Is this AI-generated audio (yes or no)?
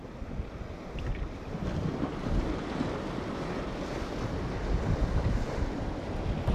no